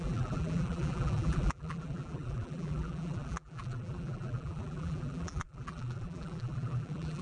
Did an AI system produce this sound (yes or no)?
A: yes